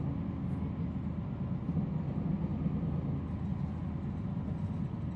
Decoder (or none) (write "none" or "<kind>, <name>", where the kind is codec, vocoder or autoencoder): none